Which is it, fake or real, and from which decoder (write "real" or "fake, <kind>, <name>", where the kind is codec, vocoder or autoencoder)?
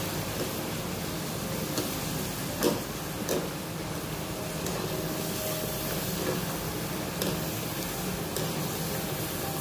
real